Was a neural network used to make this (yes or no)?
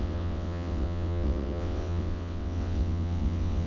yes